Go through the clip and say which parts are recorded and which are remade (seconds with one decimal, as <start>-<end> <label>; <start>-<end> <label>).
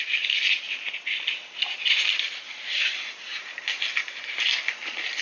0.0-5.2 recorded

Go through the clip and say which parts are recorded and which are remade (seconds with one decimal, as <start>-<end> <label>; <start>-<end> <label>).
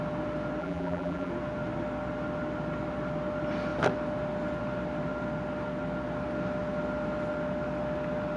0.0-0.6 recorded; 0.6-1.3 remade; 1.3-8.4 recorded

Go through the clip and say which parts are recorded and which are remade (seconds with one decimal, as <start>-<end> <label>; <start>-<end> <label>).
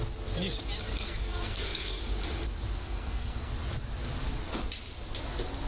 0.0-0.9 recorded; 0.9-2.0 remade; 2.0-2.8 recorded; 2.8-3.5 remade; 3.5-5.7 recorded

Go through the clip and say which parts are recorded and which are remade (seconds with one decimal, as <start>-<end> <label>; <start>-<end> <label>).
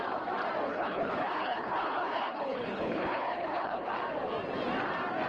0.0-0.7 recorded; 0.7-3.9 remade; 3.9-5.3 recorded